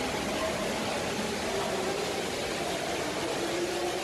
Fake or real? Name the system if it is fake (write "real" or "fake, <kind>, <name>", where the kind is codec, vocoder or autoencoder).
real